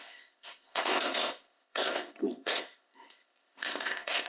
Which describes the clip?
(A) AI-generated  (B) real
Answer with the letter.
A